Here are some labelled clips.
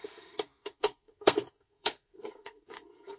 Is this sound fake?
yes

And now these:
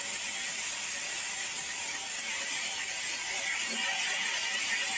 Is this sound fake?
no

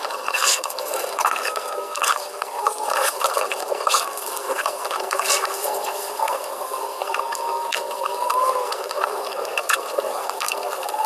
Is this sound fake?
yes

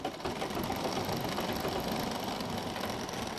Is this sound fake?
no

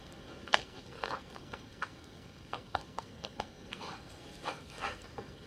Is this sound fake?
yes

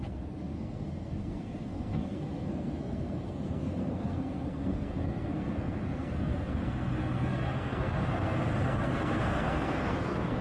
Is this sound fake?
yes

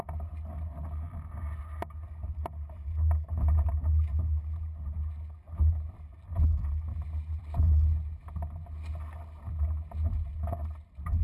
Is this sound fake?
no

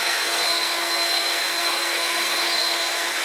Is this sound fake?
yes